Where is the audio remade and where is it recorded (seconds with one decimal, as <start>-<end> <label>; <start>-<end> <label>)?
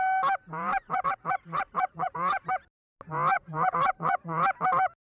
0.0-0.7 recorded; 0.7-2.4 remade; 2.4-3.3 recorded; 3.3-4.4 remade; 4.4-5.0 recorded